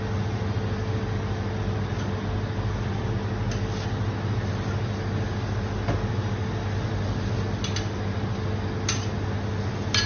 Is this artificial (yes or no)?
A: no